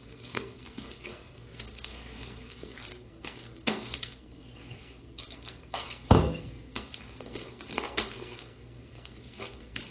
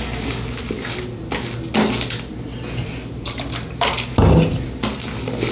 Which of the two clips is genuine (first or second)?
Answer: second